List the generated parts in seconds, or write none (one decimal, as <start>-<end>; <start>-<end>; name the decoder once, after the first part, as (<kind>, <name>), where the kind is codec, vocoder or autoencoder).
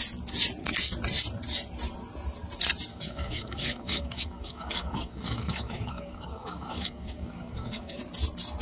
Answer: 2.9-8.0 (codec, DAC)